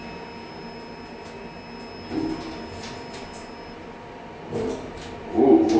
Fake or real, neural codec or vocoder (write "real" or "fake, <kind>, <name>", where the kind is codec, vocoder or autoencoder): real